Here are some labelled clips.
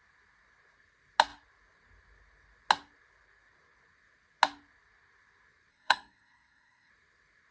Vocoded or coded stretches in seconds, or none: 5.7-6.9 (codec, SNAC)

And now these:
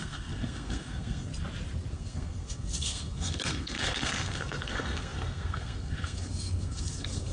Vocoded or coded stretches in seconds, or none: 0.0-1.3 (codec, SNAC); 1.9-7.3

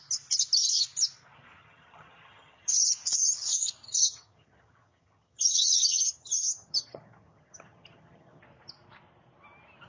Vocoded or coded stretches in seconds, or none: 1.6-2.7 (vocoder, HiFi-GAN); 4.0-8.4

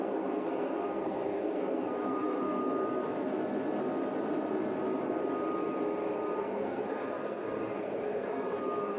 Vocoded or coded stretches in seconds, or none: 0.0-2.6 (codec, SNAC); 6.4-9.0

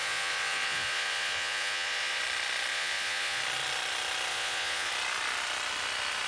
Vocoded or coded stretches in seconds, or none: 0.0-2.2 (vocoder, Vocos); 2.7-3.4; 4.3-4.9